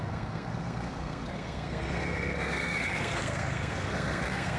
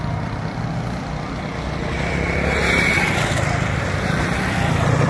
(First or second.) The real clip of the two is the second